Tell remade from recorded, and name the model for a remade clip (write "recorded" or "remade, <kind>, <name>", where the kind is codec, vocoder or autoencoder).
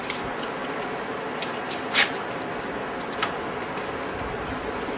recorded